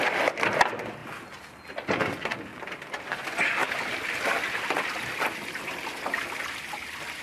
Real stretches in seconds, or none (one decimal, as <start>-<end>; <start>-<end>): 0.0-2.5; 3.2-7.2

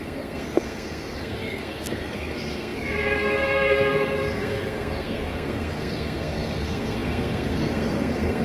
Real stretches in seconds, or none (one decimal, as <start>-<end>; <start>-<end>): none

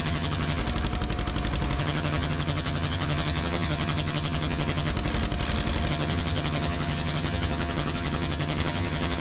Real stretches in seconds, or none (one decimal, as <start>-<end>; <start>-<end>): 0.6-1.8; 4.9-5.9